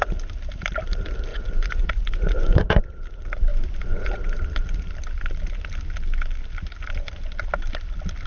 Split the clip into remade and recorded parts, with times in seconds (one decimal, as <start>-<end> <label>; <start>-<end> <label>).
0.0-1.3 recorded; 1.3-2.8 remade; 2.8-3.5 recorded; 3.5-4.2 remade; 4.2-8.3 recorded